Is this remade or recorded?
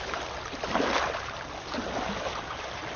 recorded